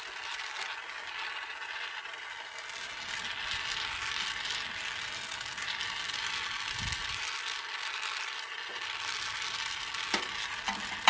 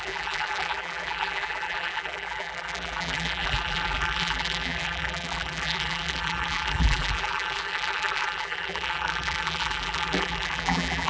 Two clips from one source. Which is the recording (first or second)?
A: first